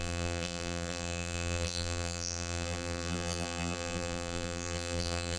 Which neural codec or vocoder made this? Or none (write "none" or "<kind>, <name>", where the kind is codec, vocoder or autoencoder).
vocoder, BigVGAN v2